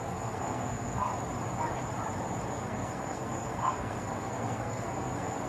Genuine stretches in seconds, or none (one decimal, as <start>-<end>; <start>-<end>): 1.1-2.5